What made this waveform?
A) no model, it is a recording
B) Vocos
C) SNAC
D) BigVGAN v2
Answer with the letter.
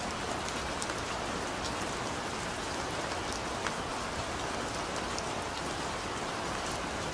A